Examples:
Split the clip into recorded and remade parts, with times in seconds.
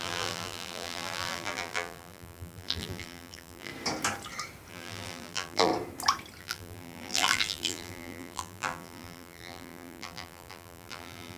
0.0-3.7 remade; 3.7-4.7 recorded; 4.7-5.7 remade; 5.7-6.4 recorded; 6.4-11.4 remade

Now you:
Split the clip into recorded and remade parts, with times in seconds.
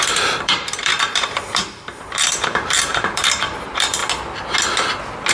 0.0-4.0 remade; 4.0-5.3 recorded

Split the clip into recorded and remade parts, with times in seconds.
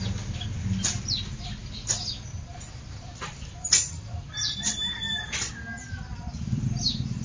0.0-2.5 recorded; 2.5-5.5 remade; 5.5-6.1 recorded; 6.1-7.2 remade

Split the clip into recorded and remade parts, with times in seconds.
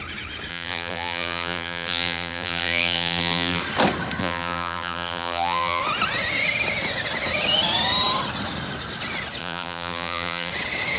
0.0-0.5 recorded; 0.5-3.6 remade; 3.6-4.2 recorded; 4.2-5.8 remade; 5.8-9.4 recorded; 9.4-10.5 remade; 10.5-11.0 recorded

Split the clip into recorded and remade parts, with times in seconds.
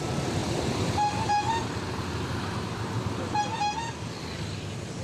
0.0-0.4 recorded; 0.4-3.4 remade; 3.4-5.0 recorded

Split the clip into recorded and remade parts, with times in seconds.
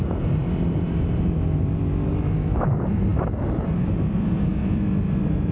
0.0-5.5 recorded